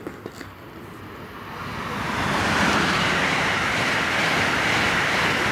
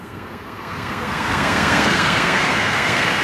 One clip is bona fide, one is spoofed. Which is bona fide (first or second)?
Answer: first